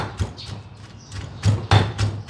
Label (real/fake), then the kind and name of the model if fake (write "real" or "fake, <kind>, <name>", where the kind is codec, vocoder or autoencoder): real